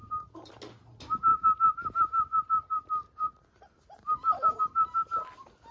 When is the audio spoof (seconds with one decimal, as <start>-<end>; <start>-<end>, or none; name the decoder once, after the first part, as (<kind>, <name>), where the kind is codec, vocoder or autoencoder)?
0.0-0.5 (vocoder, BigVGAN v2); 1.3-4.6